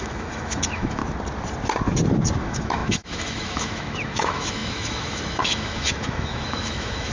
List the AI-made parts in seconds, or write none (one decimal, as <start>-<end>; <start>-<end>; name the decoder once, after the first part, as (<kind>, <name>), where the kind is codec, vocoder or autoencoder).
0.0-1.0 (autoencoder, DAC-VAE); 2.4-7.1